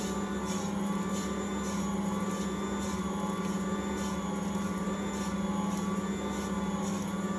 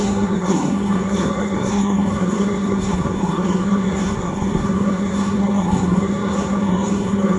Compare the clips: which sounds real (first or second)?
first